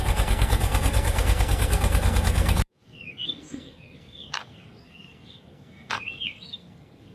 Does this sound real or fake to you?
fake